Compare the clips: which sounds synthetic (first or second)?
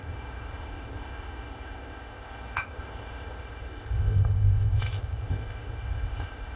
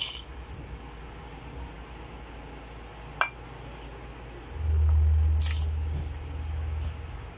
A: first